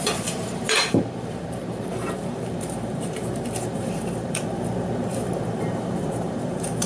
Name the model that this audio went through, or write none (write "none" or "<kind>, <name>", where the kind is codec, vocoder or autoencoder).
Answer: vocoder, BigVGAN v2